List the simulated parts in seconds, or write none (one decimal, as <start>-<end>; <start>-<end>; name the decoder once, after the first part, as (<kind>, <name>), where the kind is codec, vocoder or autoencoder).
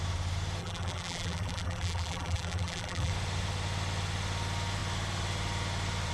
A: 0.6-3.1 (vocoder, BigVGAN v2)